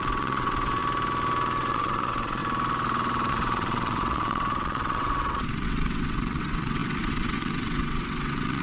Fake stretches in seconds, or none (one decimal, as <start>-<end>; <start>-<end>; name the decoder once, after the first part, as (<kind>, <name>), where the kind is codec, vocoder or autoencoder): 0.0-0.8 (vocoder, WaveNeXt); 1.7-2.4; 3.3-8.6